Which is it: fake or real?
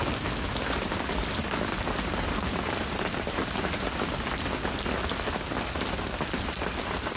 real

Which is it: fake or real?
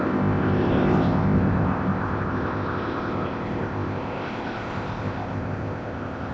fake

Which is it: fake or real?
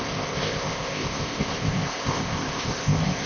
fake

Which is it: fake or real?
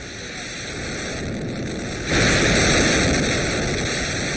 real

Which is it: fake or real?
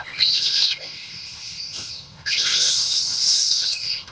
fake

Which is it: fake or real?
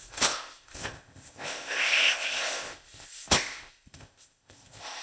fake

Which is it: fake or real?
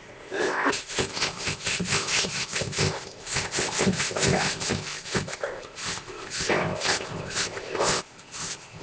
fake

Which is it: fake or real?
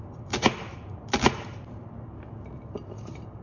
real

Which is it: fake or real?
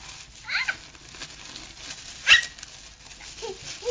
real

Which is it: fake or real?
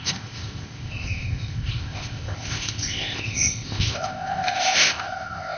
fake